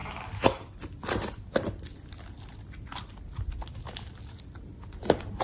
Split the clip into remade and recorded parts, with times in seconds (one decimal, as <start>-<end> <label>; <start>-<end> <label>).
0.0-5.4 recorded